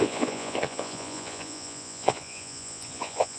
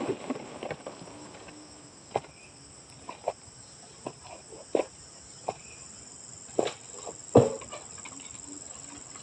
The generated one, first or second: first